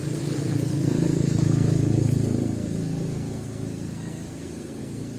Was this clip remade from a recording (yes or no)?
yes